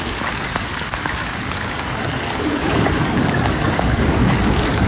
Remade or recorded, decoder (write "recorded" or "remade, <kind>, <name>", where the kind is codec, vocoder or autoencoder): remade, codec, DAC